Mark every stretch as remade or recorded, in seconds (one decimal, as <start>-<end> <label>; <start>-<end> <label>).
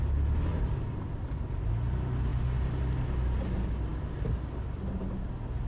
0.0-0.5 recorded; 0.5-1.7 remade; 1.7-5.7 recorded